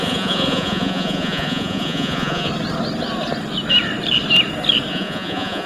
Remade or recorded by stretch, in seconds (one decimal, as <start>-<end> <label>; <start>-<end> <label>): 0.0-2.5 remade; 2.5-4.9 recorded; 4.9-5.7 remade